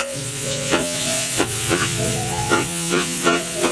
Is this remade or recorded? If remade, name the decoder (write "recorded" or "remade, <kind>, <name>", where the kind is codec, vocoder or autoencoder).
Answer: remade, vocoder, Vocos